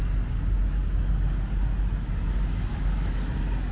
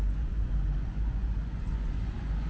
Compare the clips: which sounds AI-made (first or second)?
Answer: second